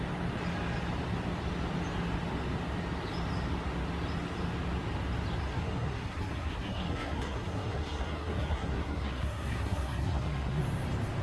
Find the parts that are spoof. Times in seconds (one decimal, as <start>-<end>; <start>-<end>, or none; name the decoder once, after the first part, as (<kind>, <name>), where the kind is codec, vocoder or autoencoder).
5.5-10.6 (codec, SNAC)